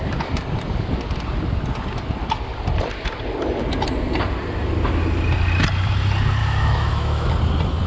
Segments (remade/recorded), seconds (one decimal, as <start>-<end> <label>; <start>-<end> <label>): 0.0-6.4 recorded; 6.4-7.3 remade; 7.3-7.9 recorded